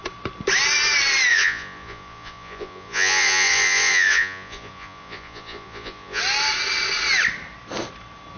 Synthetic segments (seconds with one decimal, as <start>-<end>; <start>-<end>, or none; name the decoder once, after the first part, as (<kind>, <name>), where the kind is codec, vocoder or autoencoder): 1.3-6.2 (vocoder, Vocos)